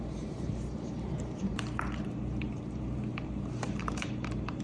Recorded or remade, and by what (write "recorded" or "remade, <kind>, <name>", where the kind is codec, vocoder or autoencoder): remade, vocoder, BigVGAN v2